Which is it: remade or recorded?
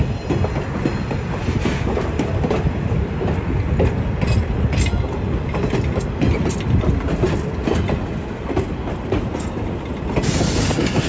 recorded